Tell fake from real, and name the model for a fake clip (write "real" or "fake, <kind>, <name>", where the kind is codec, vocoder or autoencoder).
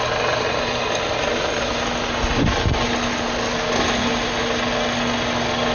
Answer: real